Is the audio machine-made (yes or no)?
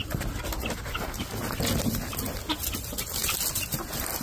no